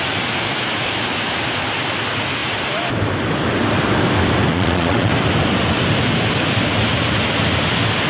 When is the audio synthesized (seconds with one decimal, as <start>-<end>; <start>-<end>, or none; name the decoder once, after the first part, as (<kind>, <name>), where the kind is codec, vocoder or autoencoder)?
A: 4.5-5.1 (vocoder, Vocos)